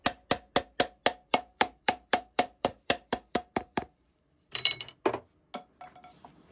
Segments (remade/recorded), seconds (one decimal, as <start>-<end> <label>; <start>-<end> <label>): 0.0-1.3 recorded; 1.3-4.9 remade; 4.9-6.5 recorded

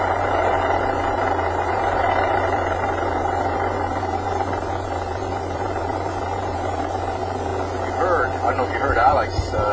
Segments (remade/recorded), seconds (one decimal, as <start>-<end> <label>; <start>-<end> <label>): 0.0-7.5 remade; 7.5-8.5 recorded; 8.5-9.7 remade